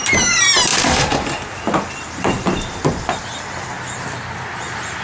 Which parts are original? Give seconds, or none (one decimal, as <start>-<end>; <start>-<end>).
0.0-5.0